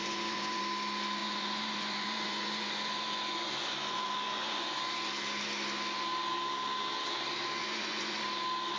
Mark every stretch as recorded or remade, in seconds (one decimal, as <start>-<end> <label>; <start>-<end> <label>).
0.0-0.6 remade; 0.6-1.2 recorded; 1.2-4.8 remade; 4.8-7.6 recorded; 7.6-8.2 remade; 8.2-8.8 recorded